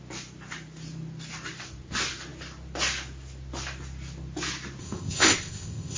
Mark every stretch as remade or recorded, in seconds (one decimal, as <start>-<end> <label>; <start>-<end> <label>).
0.0-4.8 recorded; 4.8-6.0 remade

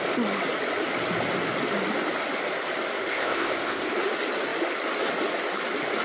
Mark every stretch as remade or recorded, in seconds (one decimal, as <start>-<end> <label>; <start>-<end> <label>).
0.0-3.1 recorded; 3.1-3.9 remade; 3.9-6.0 recorded

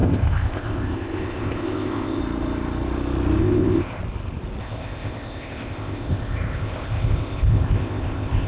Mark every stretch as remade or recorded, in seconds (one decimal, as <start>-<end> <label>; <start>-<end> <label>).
0.0-2.2 remade; 2.2-3.4 recorded; 3.4-4.0 remade; 4.0-4.6 recorded; 4.6-8.5 remade